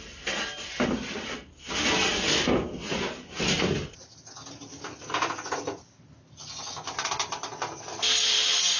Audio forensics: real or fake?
real